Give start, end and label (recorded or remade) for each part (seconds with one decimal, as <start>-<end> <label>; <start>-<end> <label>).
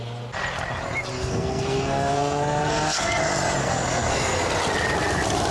0.0-1.2 recorded; 1.2-3.2 remade; 3.2-3.6 recorded; 3.6-4.5 remade; 4.5-5.5 recorded